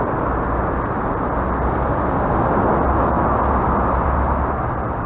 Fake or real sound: real